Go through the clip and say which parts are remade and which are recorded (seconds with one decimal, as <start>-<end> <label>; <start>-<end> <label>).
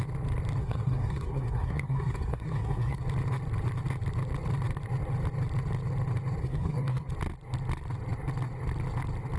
0.0-0.6 recorded; 0.6-3.0 remade; 3.0-6.4 recorded; 6.4-7.1 remade; 7.1-9.4 recorded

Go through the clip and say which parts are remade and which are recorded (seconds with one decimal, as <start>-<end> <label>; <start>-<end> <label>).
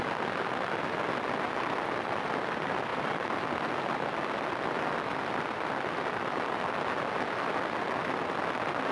0.0-8.9 recorded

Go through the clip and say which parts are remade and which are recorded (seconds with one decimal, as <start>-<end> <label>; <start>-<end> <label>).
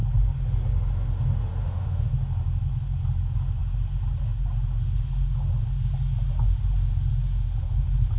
0.0-1.6 recorded; 1.6-2.1 remade; 2.1-8.2 recorded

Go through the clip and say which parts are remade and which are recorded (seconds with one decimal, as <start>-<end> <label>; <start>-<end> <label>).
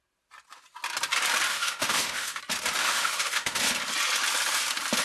0.0-1.5 recorded; 1.5-2.4 remade; 2.4-2.8 recorded; 2.8-3.6 remade; 3.6-5.0 recorded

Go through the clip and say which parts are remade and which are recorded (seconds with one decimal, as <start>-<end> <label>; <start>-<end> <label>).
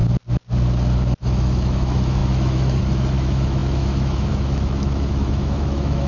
0.0-1.2 recorded; 1.2-6.1 remade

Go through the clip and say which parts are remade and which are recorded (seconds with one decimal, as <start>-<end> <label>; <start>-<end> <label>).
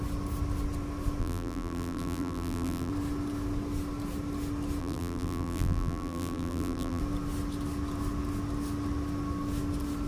0.0-1.2 recorded; 1.2-2.9 remade; 2.9-4.8 recorded; 4.8-7.0 remade; 7.0-10.1 recorded